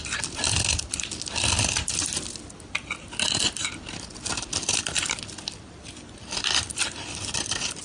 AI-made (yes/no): yes